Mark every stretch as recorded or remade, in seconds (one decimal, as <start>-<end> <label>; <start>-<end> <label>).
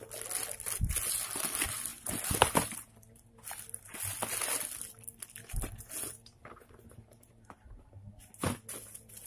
0.0-9.3 recorded